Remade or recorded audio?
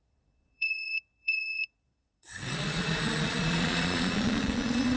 remade